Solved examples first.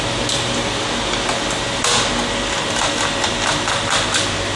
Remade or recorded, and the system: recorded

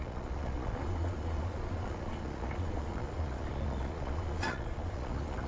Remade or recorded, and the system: remade, vocoder, Vocos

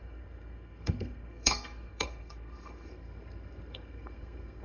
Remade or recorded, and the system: remade, codec, SNAC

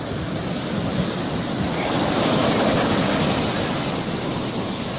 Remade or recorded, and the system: recorded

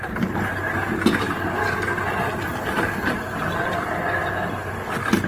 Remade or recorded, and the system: recorded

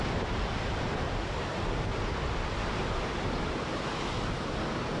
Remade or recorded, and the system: remade, vocoder, BigVGAN v2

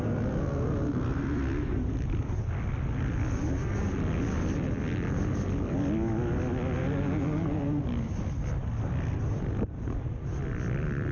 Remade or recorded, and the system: recorded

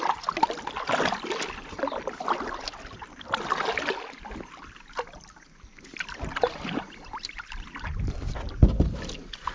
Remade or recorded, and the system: recorded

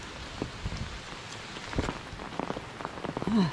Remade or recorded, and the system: recorded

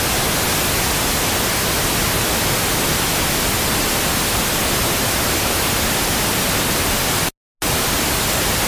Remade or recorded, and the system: recorded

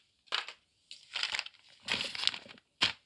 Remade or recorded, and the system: recorded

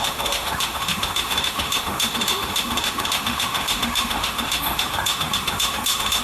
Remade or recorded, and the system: remade, autoencoder, DAC-VAE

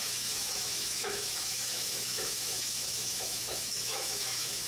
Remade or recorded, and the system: remade, autoencoder, DAC-VAE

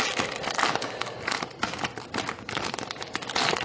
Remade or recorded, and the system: recorded